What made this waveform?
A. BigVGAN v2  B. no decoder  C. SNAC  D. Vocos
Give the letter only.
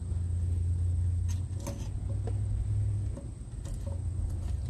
B